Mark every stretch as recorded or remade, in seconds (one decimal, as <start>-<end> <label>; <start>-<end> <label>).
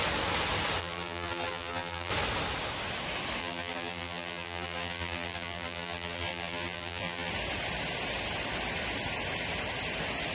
0.0-0.8 recorded; 0.8-2.1 remade; 2.1-3.4 recorded; 3.4-7.3 remade; 7.3-10.3 recorded